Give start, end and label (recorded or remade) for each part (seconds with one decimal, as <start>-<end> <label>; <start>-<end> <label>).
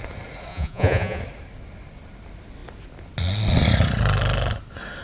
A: 0.0-0.5 recorded; 0.5-1.2 remade; 1.2-5.0 recorded